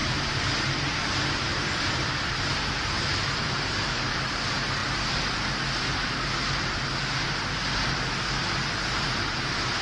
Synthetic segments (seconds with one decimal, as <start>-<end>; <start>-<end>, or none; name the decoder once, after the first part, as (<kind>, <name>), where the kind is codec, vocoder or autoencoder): 0.0-4.8 (vocoder, BigVGAN v2); 8.7-9.8